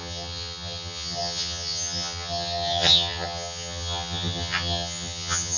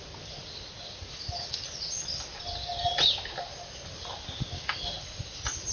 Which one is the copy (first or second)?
first